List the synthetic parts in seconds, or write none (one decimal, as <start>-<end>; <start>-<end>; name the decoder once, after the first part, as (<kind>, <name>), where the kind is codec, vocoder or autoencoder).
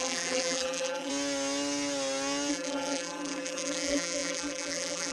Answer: 0.0-1.1 (vocoder, BigVGAN v2); 2.5-5.1